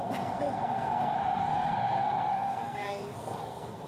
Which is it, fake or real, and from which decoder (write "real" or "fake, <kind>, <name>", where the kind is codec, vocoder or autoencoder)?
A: fake, codec, SNAC